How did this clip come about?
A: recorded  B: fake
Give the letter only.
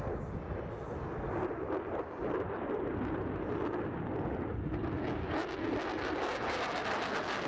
A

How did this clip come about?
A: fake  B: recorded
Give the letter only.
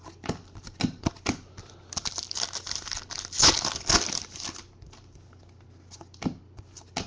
B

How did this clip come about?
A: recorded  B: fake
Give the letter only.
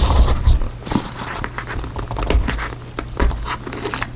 A